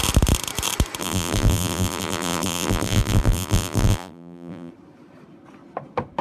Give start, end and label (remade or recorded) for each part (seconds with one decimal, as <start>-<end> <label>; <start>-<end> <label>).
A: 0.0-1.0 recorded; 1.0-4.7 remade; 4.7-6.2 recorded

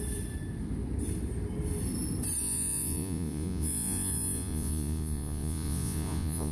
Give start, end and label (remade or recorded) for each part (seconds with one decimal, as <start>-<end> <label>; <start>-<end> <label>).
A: 0.0-2.4 recorded; 2.4-6.5 remade

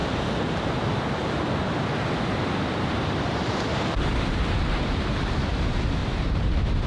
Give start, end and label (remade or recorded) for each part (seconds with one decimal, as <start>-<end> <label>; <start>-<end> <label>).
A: 0.0-0.6 remade; 0.6-2.7 recorded; 2.7-5.5 remade; 5.5-6.0 recorded; 6.0-6.9 remade

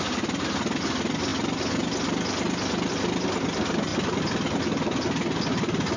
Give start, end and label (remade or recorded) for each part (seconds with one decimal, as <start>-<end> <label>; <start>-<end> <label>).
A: 0.0-6.0 recorded

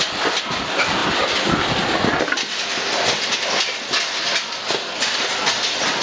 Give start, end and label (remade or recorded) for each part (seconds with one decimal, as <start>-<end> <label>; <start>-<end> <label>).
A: 0.0-6.0 recorded

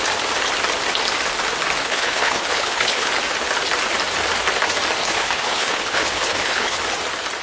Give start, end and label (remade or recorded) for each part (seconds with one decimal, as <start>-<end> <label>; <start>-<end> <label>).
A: 0.0-1.8 recorded; 1.8-3.1 remade; 3.1-5.0 recorded; 5.0-6.8 remade; 6.8-7.4 recorded

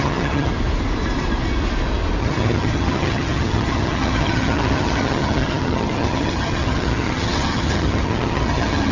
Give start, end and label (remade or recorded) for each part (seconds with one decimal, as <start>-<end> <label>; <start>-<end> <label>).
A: 0.0-0.5 remade; 0.5-2.2 recorded; 2.2-8.9 remade